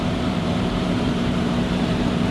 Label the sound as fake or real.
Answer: fake